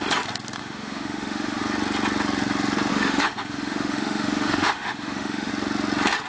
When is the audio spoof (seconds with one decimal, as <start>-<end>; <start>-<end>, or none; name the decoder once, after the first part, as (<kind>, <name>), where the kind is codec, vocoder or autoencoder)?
0.6-1.6 (autoencoder, DAC-VAE); 2.9-5.5